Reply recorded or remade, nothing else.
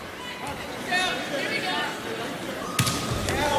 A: recorded